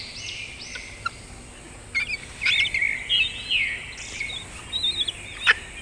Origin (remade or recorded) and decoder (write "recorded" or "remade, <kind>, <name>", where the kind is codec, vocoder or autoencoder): recorded